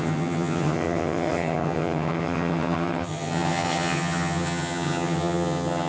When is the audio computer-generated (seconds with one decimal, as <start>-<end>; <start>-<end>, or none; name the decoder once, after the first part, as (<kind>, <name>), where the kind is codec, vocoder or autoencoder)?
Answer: 0.0-5.9 (vocoder, HiFi-GAN)